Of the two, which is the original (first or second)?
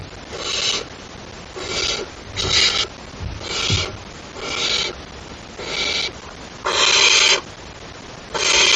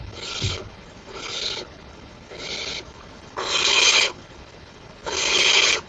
first